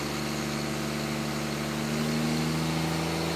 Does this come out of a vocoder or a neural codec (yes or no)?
no